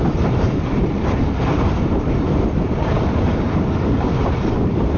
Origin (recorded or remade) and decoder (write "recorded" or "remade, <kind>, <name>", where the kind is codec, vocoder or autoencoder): remade, vocoder, BigVGAN v2